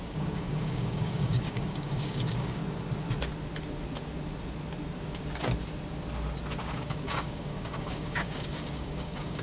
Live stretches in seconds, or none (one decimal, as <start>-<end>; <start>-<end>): 2.6-6.6